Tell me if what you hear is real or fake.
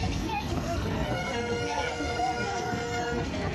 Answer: fake